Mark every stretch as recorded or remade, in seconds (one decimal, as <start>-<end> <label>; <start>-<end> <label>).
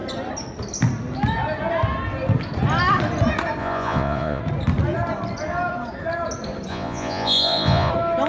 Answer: 0.0-3.6 recorded; 3.6-4.4 remade; 4.4-6.7 recorded; 6.7-7.9 remade; 7.9-8.3 recorded